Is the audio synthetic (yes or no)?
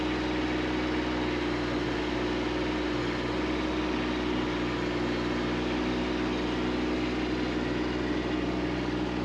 no